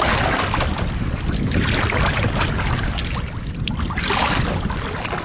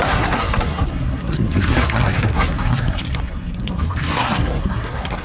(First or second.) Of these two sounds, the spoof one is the second